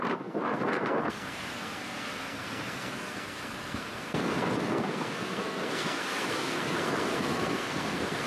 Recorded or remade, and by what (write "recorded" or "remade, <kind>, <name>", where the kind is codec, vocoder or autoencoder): remade, codec, SNAC